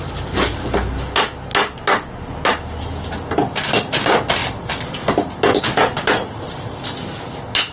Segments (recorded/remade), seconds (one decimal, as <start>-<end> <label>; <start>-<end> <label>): 0.0-7.7 recorded